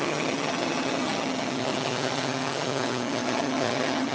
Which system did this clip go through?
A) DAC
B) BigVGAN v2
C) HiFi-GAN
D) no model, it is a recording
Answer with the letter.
C